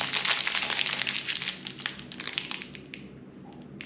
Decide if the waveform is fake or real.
real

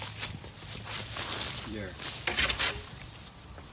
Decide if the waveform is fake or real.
real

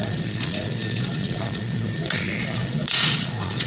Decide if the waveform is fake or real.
fake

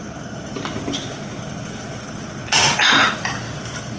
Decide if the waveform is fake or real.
real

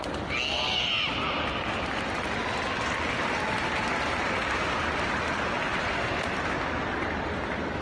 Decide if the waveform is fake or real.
real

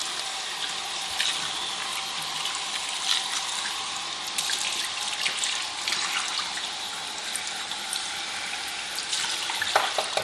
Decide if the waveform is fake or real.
real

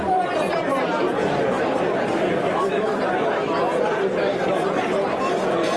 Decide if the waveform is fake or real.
real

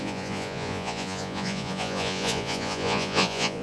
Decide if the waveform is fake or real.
fake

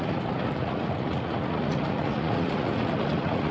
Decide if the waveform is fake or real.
fake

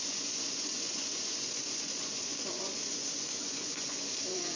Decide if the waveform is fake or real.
fake